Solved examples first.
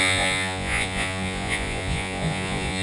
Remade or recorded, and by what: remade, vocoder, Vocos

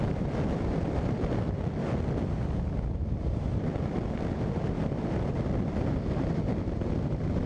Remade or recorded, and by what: recorded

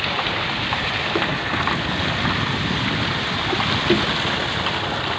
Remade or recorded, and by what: recorded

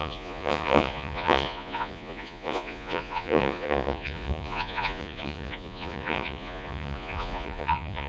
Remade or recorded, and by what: remade, vocoder, Vocos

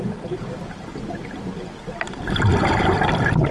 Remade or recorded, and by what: recorded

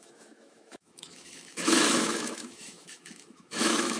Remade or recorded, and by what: remade, autoencoder, DAC-VAE